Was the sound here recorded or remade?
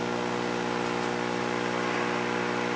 recorded